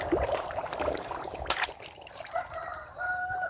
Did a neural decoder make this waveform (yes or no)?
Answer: yes